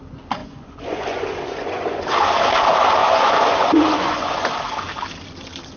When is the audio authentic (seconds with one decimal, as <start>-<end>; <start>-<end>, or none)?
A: 0.0-0.4; 2.0-3.0; 4.5-5.8